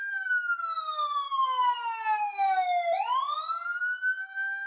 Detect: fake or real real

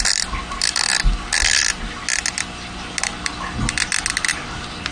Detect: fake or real real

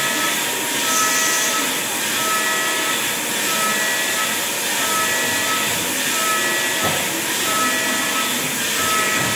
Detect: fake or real real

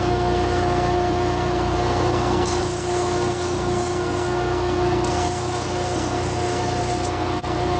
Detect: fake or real fake